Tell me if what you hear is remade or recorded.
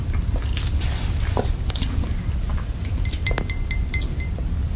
recorded